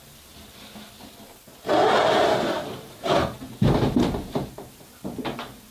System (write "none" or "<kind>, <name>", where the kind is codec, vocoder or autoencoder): none